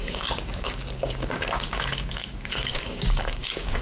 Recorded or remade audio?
remade